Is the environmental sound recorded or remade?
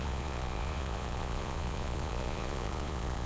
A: remade